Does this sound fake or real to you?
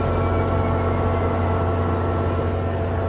real